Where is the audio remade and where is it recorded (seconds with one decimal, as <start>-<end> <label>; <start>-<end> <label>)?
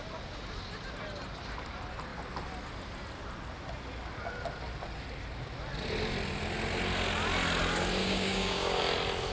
0.0-8.0 recorded; 8.0-8.8 remade; 8.8-9.3 recorded